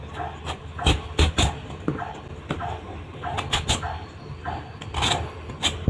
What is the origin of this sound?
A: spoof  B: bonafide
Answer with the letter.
B